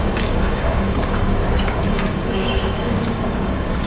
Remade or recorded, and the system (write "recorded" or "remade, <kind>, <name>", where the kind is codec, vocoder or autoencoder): remade, codec, DAC